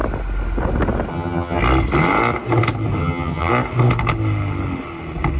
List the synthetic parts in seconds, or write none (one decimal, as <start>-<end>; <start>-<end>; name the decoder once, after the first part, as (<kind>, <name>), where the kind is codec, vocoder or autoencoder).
1.1-1.6 (vocoder, HiFi-GAN); 3.0-3.5